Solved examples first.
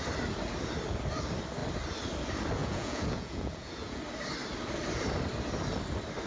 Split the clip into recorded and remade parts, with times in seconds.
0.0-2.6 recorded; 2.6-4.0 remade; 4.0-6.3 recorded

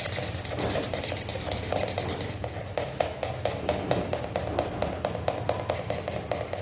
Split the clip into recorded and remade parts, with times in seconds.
0.0-6.6 recorded

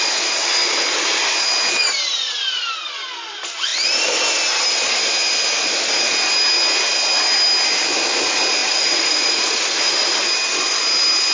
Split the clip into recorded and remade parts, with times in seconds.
0.0-8.6 recorded; 8.6-10.0 remade; 10.0-11.3 recorded

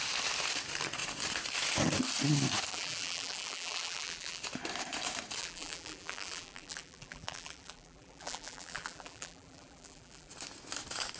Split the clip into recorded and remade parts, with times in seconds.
0.0-2.7 recorded; 2.7-4.4 remade; 4.4-5.4 recorded; 5.4-10.3 remade; 10.3-11.2 recorded

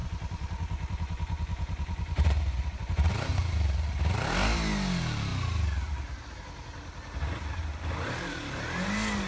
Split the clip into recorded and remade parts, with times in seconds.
0.0-3.1 remade; 3.1-9.3 recorded

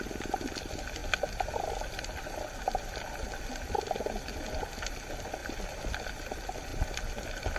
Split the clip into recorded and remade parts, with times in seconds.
0.0-7.6 recorded

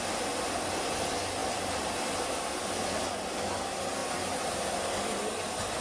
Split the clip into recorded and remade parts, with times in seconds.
0.0-5.8 recorded